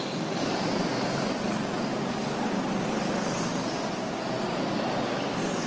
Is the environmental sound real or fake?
real